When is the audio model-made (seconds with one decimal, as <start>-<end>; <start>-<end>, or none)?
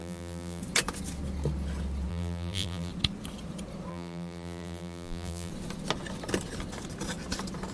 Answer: 0.0-0.6; 2.1-2.9; 3.9-5.5